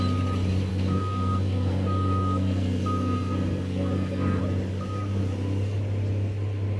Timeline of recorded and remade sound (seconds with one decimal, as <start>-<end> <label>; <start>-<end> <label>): 0.0-0.7 recorded; 0.7-4.4 remade; 4.4-6.8 recorded